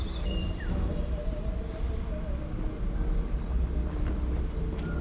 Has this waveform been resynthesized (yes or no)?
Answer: no